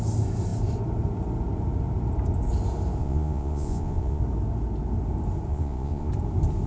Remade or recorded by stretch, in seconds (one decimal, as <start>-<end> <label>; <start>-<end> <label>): 0.0-3.0 recorded; 3.0-4.2 remade; 4.2-5.5 recorded; 5.5-6.1 remade; 6.1-6.7 recorded